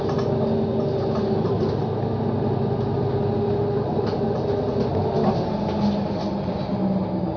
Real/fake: real